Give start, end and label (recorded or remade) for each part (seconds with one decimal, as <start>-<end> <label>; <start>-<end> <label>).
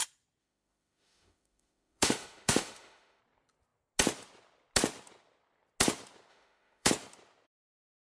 0.0-0.4 recorded; 0.4-3.2 remade; 3.2-6.3 recorded; 6.3-6.9 remade; 6.9-8.1 recorded